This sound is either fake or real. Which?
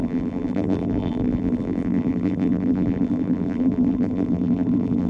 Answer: fake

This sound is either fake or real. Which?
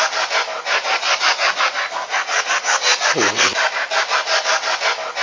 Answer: real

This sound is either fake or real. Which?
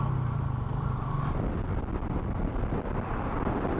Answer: real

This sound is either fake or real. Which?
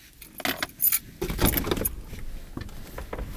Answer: real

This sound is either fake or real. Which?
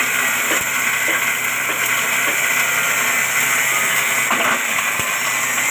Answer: real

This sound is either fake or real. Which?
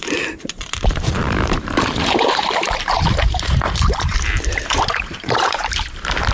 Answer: fake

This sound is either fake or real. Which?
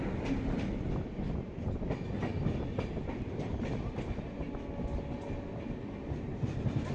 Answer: real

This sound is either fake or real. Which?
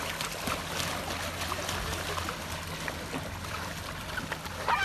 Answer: real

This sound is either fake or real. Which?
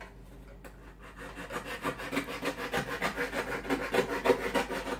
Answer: real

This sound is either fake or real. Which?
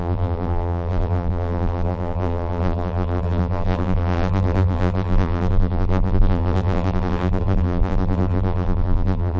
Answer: fake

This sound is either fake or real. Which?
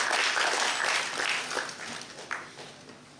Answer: real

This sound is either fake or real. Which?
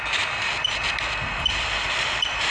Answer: fake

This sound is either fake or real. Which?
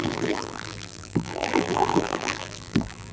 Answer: fake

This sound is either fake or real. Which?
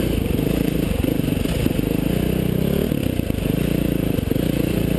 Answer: real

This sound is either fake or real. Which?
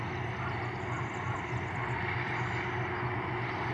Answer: fake